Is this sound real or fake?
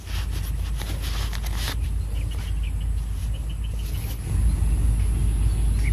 real